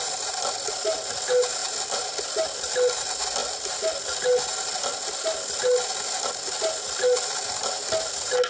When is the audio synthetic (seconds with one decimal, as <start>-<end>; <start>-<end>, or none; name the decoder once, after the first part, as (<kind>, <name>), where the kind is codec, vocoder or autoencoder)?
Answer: none